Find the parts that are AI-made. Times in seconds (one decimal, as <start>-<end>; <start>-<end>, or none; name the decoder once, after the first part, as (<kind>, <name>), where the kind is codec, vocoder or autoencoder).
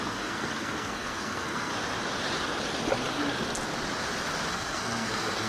0.0-1.7 (codec, SNAC); 4.5-5.5